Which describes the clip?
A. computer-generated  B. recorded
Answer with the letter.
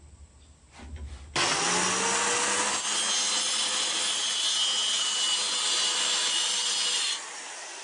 B